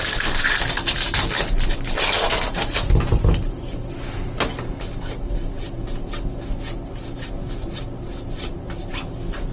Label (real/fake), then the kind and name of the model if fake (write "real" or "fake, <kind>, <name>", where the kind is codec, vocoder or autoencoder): real